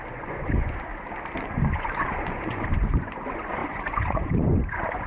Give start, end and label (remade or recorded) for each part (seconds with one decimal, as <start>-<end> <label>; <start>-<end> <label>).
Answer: 0.0-0.9 remade; 0.9-1.4 recorded; 1.4-5.1 remade